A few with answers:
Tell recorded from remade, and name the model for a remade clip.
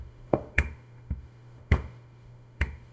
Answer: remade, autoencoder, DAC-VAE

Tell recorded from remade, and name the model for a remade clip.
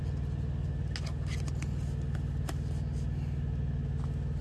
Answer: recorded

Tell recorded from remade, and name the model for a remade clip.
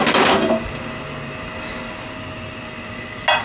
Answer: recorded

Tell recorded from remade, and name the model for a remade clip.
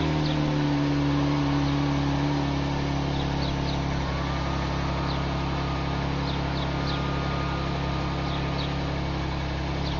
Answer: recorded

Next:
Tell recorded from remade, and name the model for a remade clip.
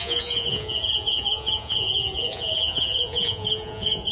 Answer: remade, vocoder, Vocos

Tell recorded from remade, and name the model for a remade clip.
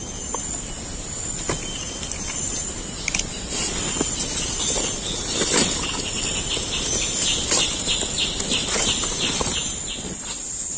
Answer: recorded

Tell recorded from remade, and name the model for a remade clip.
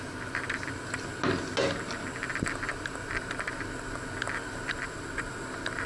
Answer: recorded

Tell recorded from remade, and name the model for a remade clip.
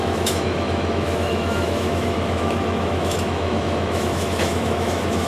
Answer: remade, autoencoder, DAC-VAE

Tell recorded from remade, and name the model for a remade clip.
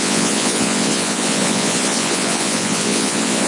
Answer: remade, vocoder, Vocos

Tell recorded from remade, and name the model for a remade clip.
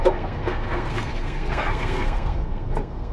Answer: remade, codec, SNAC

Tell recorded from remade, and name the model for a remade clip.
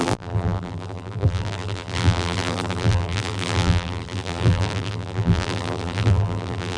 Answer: remade, vocoder, BigVGAN v2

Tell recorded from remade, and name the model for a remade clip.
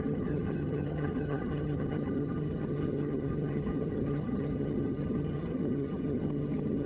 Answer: remade, vocoder, HiFi-GAN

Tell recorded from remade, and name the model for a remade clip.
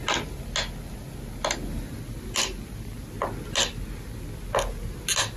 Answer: recorded